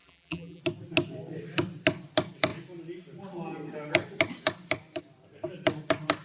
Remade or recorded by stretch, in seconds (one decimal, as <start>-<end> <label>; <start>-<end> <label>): 0.0-0.6 remade; 0.6-6.2 recorded